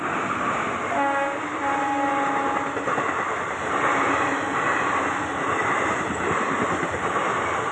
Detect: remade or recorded recorded